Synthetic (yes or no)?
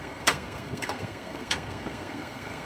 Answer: yes